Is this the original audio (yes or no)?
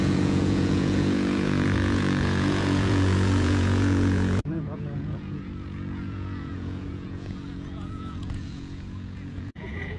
no